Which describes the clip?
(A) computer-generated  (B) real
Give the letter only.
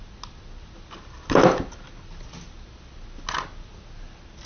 B